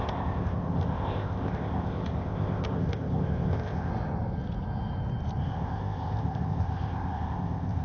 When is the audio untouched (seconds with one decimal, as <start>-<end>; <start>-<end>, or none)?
3.9-5.4